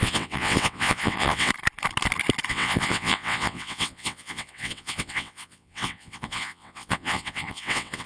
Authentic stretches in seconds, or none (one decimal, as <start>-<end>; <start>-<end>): 1.5-2.5